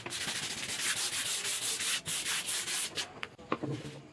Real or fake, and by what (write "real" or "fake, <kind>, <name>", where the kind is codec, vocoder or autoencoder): real